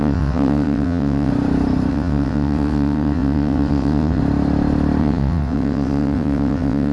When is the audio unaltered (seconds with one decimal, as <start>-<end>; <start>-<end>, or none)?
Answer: 1.3-1.9; 4.2-5.0